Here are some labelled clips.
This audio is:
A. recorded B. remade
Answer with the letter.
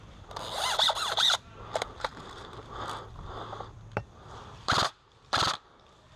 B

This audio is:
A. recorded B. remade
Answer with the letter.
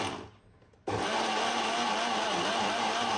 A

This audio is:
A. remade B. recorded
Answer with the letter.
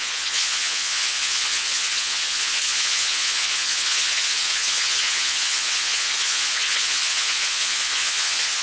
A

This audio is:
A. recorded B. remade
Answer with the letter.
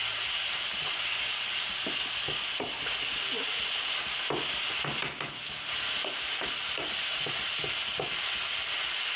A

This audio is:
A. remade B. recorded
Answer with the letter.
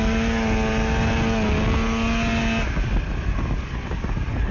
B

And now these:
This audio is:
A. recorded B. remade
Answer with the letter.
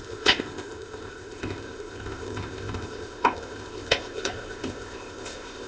B